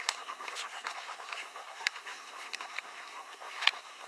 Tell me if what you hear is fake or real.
fake